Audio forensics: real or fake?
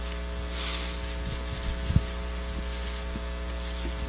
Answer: real